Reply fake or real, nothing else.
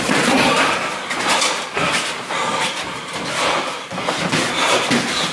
real